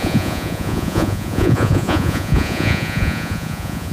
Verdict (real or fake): fake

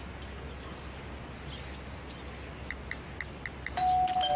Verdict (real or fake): real